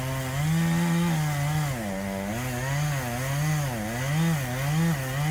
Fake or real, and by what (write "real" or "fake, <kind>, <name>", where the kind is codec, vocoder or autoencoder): real